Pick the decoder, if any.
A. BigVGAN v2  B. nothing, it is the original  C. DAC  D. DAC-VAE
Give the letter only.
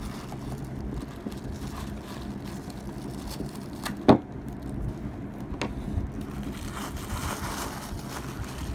B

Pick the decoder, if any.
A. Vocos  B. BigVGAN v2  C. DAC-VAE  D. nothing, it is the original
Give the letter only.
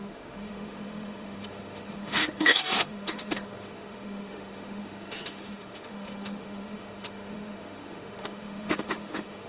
C